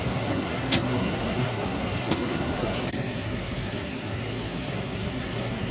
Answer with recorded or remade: remade